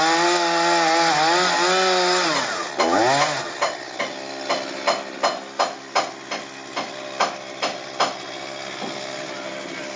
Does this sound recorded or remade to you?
recorded